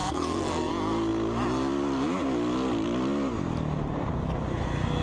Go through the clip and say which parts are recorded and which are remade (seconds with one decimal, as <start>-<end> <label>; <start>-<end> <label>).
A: 0.0-0.7 remade; 0.7-5.0 recorded